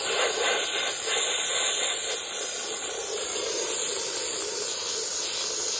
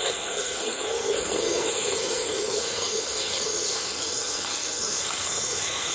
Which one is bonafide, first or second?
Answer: first